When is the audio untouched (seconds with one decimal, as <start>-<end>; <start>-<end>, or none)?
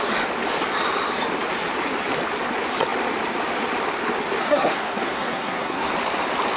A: 0.0-4.4; 5.9-6.6